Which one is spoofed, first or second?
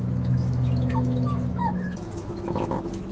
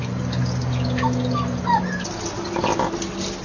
first